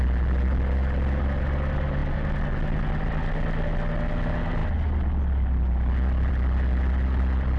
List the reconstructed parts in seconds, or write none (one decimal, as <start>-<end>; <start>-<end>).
none